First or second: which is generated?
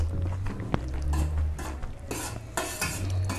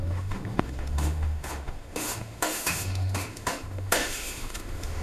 second